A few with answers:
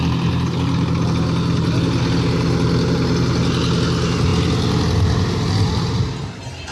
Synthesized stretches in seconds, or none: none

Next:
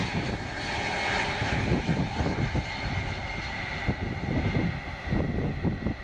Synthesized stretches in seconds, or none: 1.4-1.9 (vocoder, BigVGAN v2)

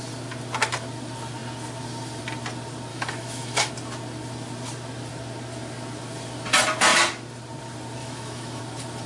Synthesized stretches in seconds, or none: 2.9-3.7 (autoencoder, DAC-VAE); 8.0-8.6